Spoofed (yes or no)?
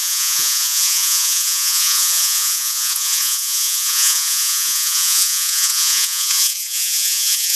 yes